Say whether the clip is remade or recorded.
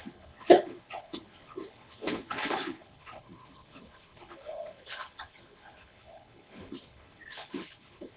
remade